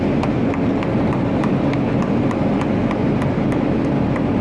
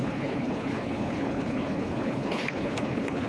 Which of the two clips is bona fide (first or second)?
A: first